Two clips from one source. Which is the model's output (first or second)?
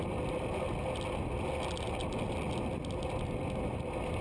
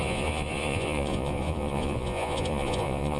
second